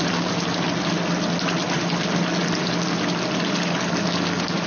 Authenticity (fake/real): real